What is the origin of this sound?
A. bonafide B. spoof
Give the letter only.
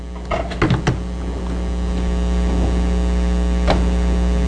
A